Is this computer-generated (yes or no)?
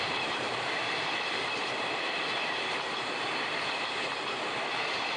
yes